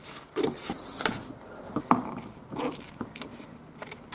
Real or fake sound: real